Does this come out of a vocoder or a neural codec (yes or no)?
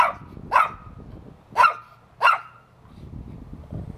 no